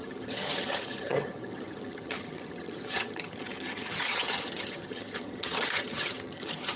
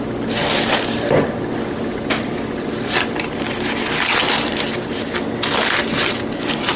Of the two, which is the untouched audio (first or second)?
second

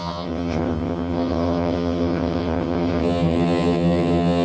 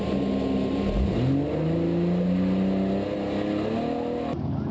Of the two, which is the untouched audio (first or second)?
second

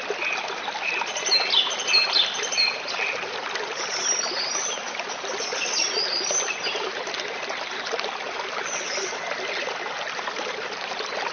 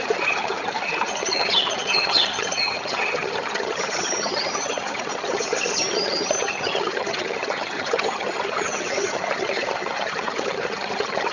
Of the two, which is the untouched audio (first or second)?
first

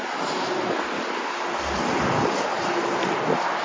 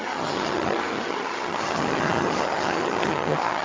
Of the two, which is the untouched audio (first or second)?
first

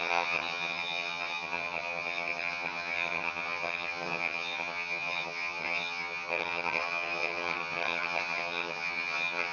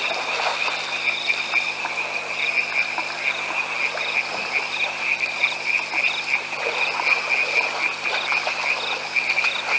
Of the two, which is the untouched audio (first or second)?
second